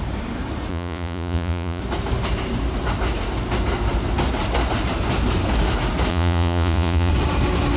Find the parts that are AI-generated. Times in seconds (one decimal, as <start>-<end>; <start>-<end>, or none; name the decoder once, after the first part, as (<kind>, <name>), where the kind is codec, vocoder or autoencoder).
0.7-1.8 (vocoder, Vocos); 6.1-7.1